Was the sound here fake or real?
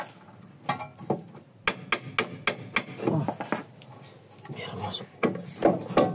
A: real